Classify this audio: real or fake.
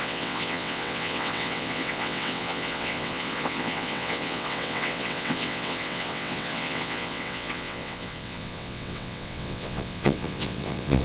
fake